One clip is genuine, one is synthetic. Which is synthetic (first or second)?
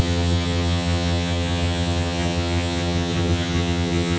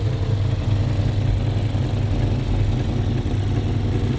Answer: first